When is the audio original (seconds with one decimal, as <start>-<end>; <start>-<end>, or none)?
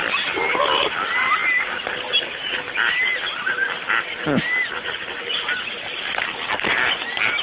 0.0-7.4